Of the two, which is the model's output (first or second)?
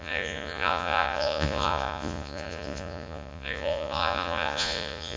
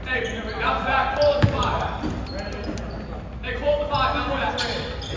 first